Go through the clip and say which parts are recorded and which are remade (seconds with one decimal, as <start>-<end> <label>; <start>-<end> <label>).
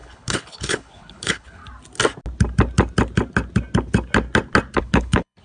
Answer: 0.0-1.6 remade; 1.6-4.8 recorded; 4.8-5.4 remade